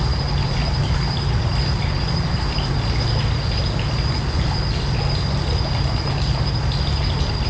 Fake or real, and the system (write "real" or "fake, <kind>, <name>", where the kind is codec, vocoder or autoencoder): real